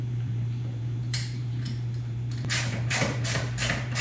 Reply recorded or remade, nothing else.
remade